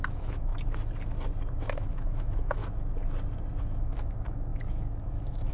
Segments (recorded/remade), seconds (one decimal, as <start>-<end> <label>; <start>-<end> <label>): 0.0-0.5 remade; 0.5-1.6 recorded; 1.6-2.6 remade; 2.6-3.6 recorded; 3.6-5.5 remade